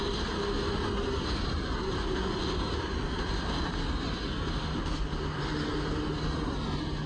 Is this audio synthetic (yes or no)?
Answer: no